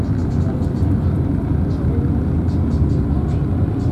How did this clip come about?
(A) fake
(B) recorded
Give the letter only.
B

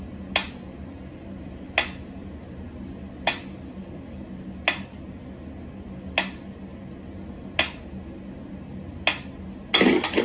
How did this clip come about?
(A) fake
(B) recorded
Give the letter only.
B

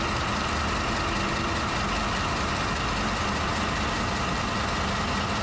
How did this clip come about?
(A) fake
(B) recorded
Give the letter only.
B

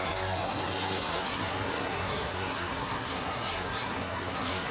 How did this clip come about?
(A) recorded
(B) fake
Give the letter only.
B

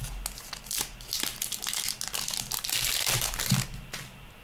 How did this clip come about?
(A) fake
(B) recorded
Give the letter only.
B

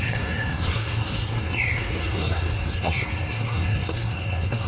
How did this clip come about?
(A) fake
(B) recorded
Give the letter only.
A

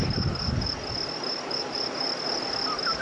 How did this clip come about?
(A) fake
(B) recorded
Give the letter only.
B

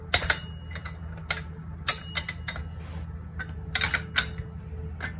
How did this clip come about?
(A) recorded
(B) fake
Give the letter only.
A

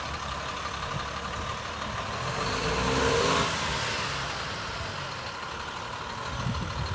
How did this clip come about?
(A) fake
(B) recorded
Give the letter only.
B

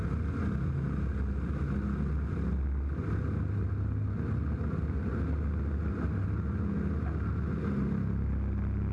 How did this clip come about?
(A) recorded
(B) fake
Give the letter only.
A